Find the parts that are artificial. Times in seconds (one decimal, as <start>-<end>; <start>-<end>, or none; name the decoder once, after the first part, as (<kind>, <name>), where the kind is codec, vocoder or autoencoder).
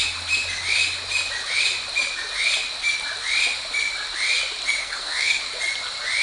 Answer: 4.8-5.4 (codec, SNAC)